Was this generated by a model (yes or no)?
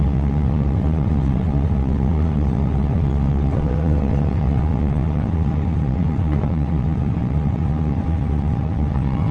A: yes